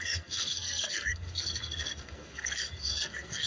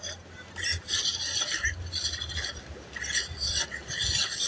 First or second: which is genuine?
second